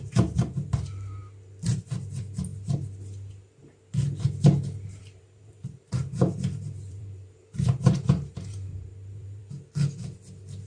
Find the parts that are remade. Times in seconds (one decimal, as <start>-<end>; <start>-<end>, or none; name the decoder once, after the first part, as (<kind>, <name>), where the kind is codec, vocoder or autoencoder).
5.0-9.4 (vocoder, BigVGAN v2)